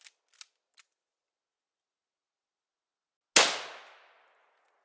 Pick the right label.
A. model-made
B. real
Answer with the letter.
B